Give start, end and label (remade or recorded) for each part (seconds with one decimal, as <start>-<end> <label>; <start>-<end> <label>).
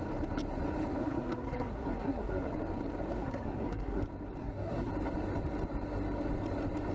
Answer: 0.0-1.0 recorded; 1.0-2.5 remade; 2.5-3.1 recorded; 3.1-4.0 remade; 4.0-4.4 recorded; 4.4-4.9 remade; 4.9-6.9 recorded